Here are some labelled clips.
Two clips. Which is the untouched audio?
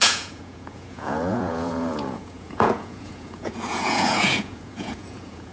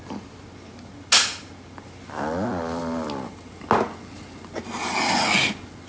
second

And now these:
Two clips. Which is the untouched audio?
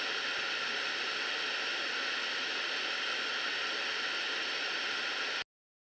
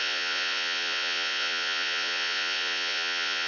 first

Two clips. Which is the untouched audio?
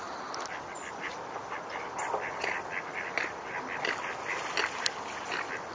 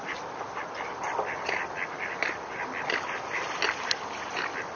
first